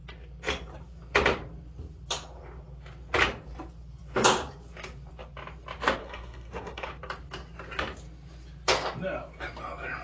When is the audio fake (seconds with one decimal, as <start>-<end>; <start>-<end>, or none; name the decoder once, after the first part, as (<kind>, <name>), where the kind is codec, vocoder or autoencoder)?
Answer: 6.0-6.9 (codec, SNAC)